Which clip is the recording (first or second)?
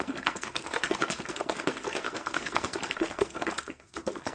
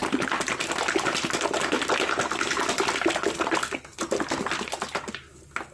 second